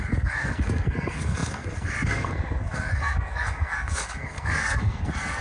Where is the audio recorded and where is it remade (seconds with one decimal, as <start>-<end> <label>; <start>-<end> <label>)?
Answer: 0.0-5.4 remade